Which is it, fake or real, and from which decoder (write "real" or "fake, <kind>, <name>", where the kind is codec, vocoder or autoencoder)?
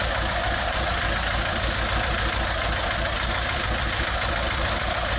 fake, vocoder, BigVGAN v2